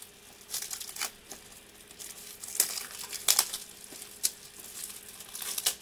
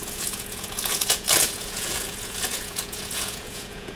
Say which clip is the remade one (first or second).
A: second